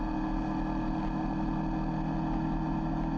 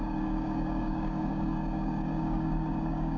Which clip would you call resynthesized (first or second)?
second